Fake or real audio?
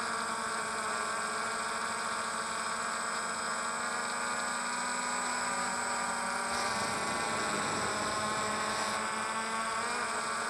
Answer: real